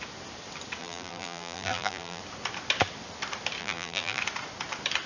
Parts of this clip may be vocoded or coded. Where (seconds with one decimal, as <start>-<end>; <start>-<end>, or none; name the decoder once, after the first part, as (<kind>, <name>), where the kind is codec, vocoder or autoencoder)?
0.8-2.2 (vocoder, BigVGAN v2); 3.6-4.2